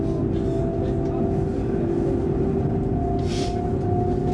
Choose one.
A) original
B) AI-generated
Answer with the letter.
A